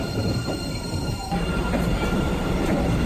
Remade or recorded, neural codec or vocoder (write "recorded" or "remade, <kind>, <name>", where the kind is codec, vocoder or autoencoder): remade, vocoder, BigVGAN v2